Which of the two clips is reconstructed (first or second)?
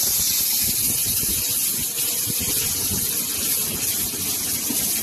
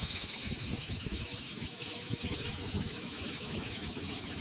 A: second